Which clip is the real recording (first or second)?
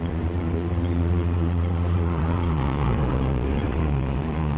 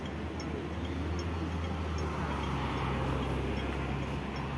second